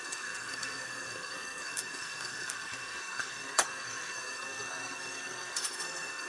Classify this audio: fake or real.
fake